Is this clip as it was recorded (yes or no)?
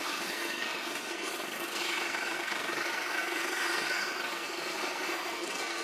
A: no